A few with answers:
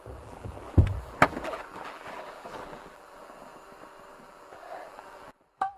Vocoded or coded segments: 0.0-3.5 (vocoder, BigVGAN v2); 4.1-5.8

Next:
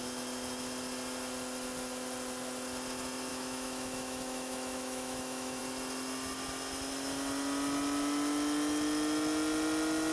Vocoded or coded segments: 3.3-5.6 (autoencoder, DAC-VAE)

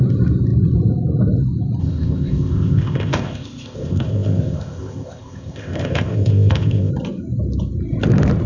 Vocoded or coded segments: 1.8-6.9 (codec, ZipCodec)

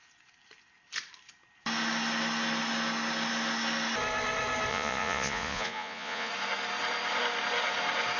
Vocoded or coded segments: 4.7-6.3 (vocoder, Vocos)

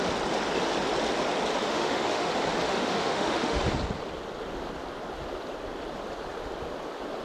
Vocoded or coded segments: 1.6-2.3 (autoencoder, DAC-VAE); 2.7-3.6

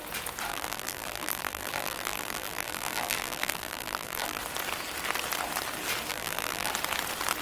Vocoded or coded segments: 0.5-4.4 (vocoder, BigVGAN v2); 6.1-6.7